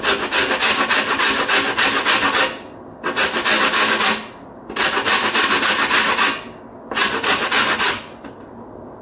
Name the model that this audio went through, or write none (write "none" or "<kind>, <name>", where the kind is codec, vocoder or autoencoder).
none